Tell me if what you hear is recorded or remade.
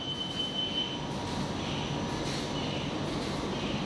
recorded